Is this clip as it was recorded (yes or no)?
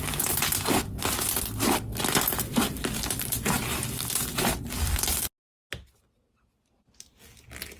yes